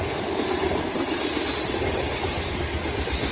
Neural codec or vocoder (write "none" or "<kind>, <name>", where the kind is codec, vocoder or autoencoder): none